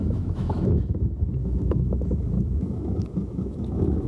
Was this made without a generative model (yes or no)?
no